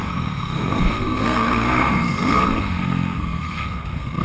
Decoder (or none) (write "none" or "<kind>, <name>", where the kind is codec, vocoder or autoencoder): codec, SNAC